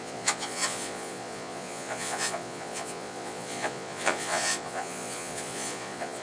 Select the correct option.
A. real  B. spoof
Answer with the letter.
B